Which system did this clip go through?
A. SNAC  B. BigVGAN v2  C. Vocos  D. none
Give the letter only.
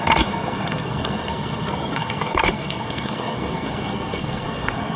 A